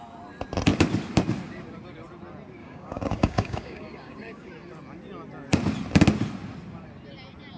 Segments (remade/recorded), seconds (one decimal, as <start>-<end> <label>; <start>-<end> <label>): 0.0-2.6 recorded; 2.6-4.5 remade; 4.5-7.6 recorded